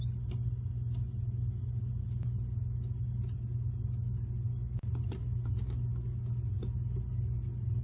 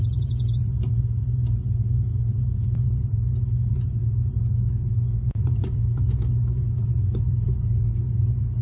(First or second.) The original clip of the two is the first